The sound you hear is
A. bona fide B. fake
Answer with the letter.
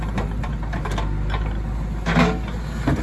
A